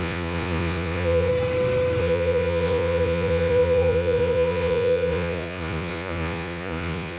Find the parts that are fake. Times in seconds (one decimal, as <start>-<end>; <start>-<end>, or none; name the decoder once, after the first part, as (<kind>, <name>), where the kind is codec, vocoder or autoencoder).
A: 0.0-1.3 (vocoder, Vocos); 2.0-7.2